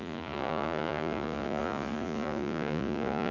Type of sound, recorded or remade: remade